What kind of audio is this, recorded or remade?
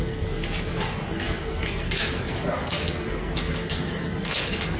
remade